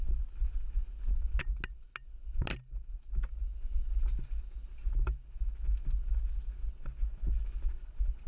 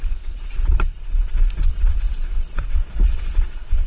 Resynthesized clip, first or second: second